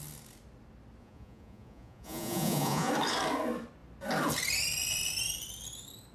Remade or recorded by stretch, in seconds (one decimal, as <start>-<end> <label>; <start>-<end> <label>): 0.0-1.0 recorded; 1.0-2.9 remade; 2.9-6.1 recorded